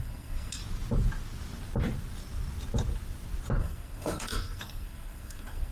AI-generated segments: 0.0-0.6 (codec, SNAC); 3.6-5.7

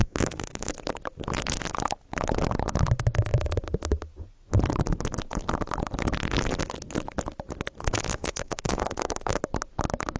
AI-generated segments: 0.0-0.7 (codec, SNAC); 7.8-9.4

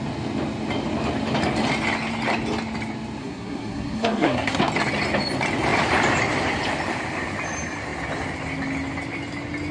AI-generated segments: 3.2-4.6 (codec, SNAC)

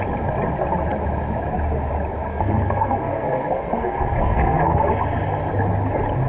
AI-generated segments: 2.3-4.9 (codec, SNAC)

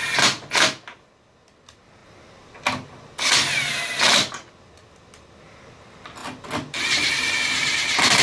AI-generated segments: none

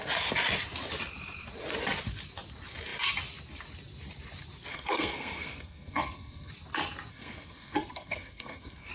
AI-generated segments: 4.7-6.5 (codec, SNAC); 7.1-8.9

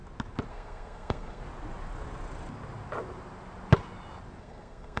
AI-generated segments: 0.5-1.4 (codec, SNAC); 4.4-5.0